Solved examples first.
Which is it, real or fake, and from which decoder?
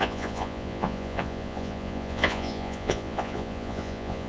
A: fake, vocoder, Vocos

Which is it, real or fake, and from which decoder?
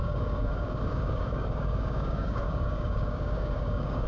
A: fake, codec, DAC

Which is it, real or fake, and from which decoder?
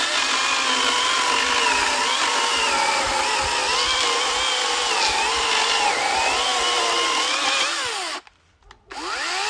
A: real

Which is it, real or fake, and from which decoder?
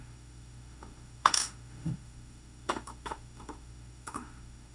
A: fake, autoencoder, DAC-VAE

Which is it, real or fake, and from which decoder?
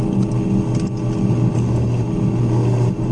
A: real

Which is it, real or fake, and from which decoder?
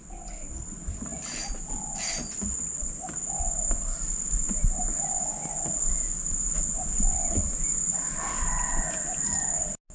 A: real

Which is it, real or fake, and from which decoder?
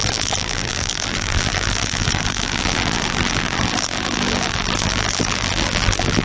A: fake, vocoder, BigVGAN v2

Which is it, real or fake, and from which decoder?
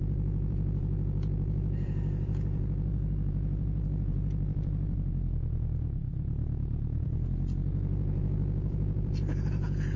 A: fake, vocoder, Vocos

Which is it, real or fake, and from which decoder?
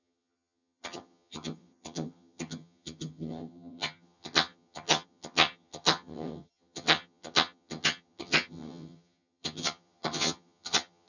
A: fake, vocoder, HiFi-GAN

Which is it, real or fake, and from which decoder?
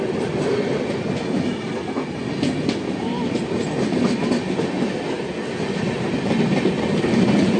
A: real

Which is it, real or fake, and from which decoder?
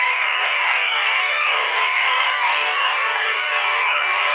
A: fake, codec, DAC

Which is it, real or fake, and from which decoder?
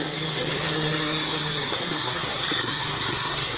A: fake, codec, SNAC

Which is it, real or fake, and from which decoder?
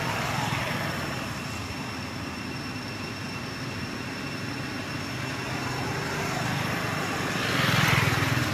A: fake, vocoder, BigVGAN v2